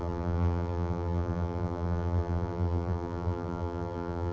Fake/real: fake